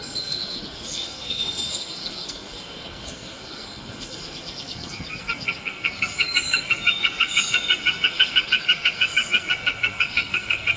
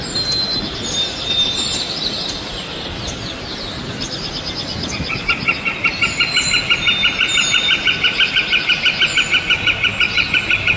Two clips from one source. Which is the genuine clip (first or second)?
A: second